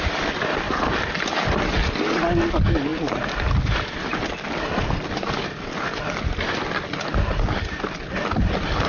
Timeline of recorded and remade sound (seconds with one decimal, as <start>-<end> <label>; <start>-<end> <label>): 0.0-8.9 recorded